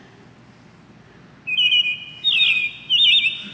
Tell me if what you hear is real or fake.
real